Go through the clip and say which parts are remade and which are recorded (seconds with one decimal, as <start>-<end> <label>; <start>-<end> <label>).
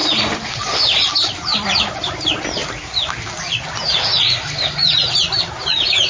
0.0-6.1 recorded